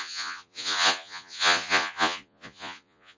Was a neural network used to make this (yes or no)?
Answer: yes